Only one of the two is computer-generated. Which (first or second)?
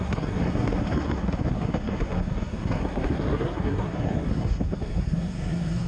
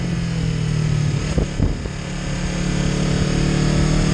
first